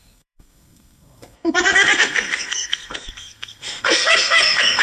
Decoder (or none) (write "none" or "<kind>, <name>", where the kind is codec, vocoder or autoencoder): codec, SNAC